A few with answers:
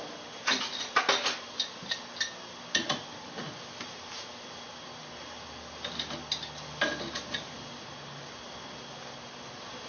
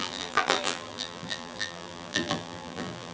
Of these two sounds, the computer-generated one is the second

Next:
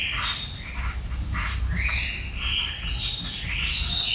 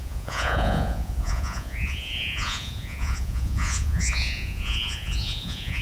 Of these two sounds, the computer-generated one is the second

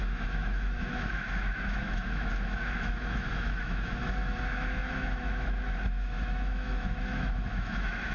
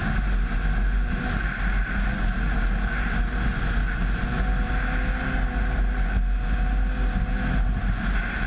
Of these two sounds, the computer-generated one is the first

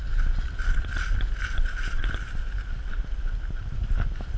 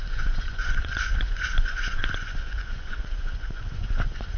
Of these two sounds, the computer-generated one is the second